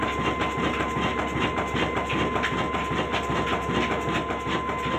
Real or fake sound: real